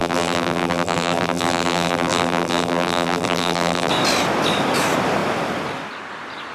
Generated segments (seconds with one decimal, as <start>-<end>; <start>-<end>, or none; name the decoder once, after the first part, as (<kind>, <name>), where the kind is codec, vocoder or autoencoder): 0.0-3.9 (vocoder, BigVGAN v2)